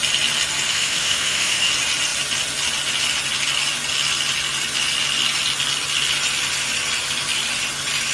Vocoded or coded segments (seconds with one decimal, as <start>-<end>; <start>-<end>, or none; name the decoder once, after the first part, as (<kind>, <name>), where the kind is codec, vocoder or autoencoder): 0.7-1.7 (autoencoder, DAC-VAE)